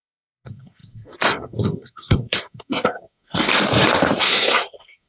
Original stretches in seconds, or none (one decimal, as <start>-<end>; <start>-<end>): 3.5-4.2